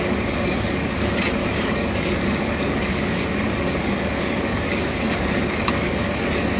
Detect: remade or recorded remade